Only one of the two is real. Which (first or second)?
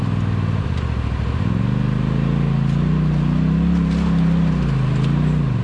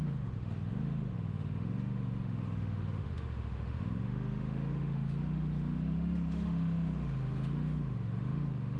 first